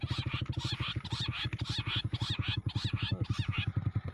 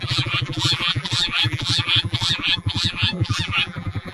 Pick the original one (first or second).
first